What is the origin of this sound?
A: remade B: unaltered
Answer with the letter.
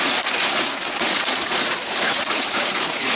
A